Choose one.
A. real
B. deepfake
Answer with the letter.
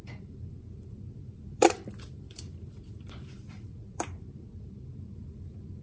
B